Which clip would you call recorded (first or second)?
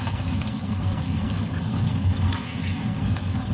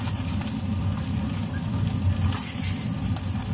second